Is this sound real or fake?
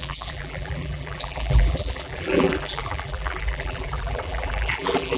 fake